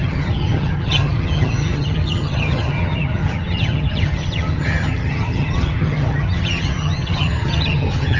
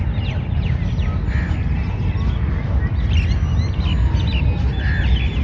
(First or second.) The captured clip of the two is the second